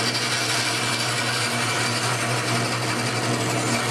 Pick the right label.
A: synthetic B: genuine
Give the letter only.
B